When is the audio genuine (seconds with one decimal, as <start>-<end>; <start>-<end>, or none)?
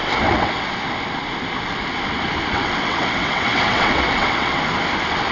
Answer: 0.7-2.5; 4.6-5.3